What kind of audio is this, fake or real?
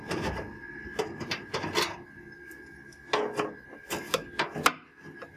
real